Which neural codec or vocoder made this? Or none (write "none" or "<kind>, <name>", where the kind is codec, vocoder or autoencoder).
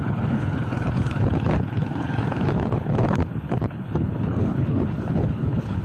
codec, HILCodec